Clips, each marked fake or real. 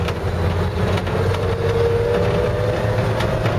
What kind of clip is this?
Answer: real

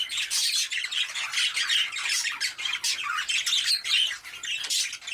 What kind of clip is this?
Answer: real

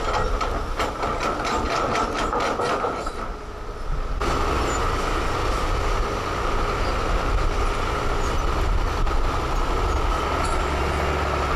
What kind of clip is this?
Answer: real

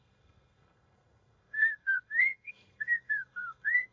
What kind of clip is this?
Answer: fake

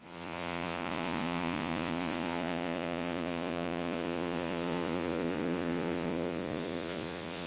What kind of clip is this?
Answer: fake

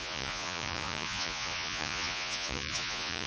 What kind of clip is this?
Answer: fake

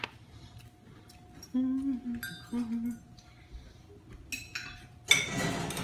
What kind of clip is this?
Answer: real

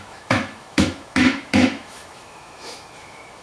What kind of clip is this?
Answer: fake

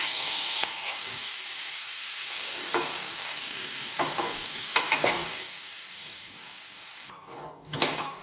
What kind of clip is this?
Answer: fake